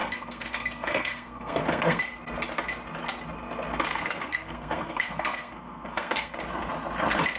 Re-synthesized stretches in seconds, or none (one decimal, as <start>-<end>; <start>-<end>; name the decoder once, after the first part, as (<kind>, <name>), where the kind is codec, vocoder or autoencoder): 0.0-2.0 (codec, SNAC); 3.9-6.4